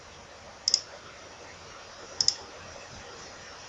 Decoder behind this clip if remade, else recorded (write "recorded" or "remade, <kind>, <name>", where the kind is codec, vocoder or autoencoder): recorded